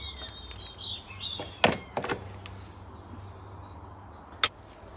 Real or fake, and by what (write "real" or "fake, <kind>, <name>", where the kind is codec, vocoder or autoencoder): real